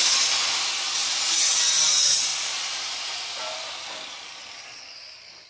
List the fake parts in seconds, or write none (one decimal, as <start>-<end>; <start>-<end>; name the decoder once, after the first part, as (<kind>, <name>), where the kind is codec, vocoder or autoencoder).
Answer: 1.0-1.6 (vocoder, BigVGAN v2); 2.3-3.7